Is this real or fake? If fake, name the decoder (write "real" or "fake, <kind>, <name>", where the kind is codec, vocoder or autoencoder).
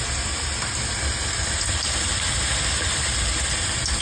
real